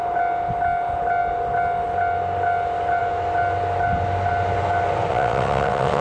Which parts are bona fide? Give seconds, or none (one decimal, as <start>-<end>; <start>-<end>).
0.0-5.1